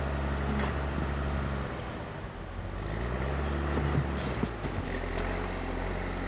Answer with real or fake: real